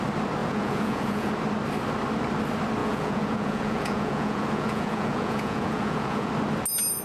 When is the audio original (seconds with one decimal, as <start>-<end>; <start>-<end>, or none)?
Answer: 0.0-0.4; 1.3-2.8; 6.3-7.0